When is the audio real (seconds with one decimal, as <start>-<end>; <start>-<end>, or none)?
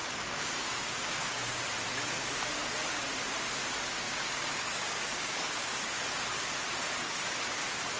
1.6-3.9; 6.0-8.0